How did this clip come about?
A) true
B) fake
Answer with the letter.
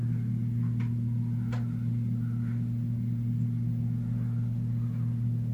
A